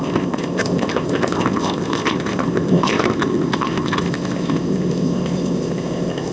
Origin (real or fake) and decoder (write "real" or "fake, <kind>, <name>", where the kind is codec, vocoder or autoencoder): fake, codec, ZipCodec